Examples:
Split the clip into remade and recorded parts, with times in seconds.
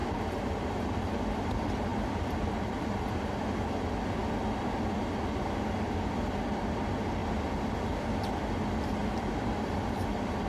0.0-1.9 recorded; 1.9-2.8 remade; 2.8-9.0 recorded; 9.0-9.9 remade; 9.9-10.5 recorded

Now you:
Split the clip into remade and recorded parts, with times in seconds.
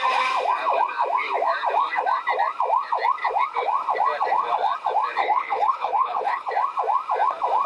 0.0-5.2 recorded; 5.2-6.5 remade; 6.5-7.7 recorded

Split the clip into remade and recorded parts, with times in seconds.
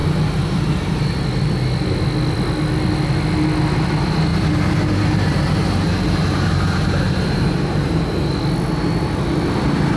0.0-1.0 remade; 1.0-4.3 recorded; 4.3-8.3 remade; 8.3-10.0 recorded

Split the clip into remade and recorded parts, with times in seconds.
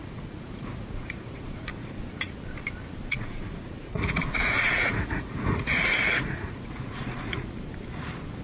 0.0-2.0 remade; 2.0-3.0 recorded; 3.0-7.5 remade; 7.5-8.4 recorded